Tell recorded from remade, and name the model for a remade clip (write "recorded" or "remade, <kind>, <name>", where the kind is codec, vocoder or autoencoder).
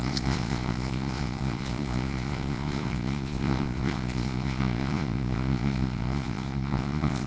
remade, vocoder, Vocos